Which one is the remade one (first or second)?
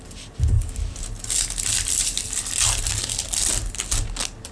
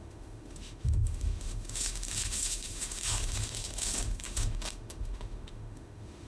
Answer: second